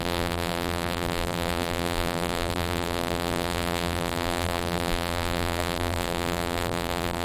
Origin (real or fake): fake